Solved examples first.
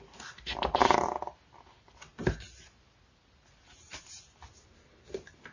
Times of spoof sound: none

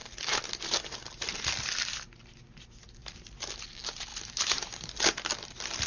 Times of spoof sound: 3.0-3.5 (vocoder, BigVGAN v2); 4.1-5.3